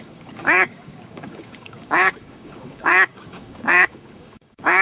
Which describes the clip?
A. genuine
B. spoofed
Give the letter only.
B